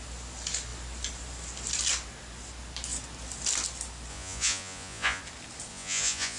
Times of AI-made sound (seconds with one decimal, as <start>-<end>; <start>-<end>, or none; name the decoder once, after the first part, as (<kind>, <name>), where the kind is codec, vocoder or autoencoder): 4.1-5.2 (vocoder, Vocos); 5.7-6.4